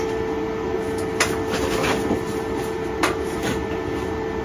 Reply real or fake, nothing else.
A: real